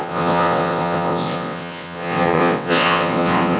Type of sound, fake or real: fake